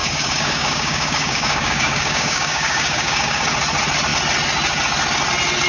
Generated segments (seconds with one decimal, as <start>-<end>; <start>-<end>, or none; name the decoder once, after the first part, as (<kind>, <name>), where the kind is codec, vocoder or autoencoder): 0.0-3.4 (codec, DAC)